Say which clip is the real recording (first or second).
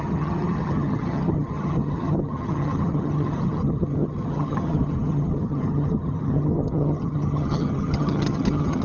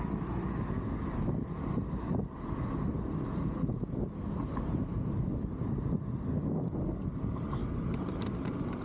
second